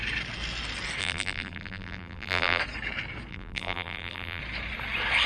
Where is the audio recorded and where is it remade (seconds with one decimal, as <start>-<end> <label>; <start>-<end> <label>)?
0.0-1.0 recorded; 1.0-2.6 remade; 2.6-3.3 recorded; 3.3-4.4 remade; 4.4-5.3 recorded